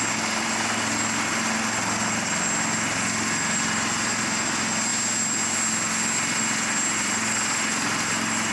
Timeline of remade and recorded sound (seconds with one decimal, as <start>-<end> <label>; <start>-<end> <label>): 0.0-8.5 recorded